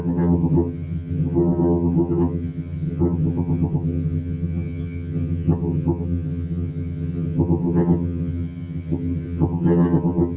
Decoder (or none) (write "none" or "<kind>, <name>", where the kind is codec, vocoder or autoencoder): vocoder, HiFi-GAN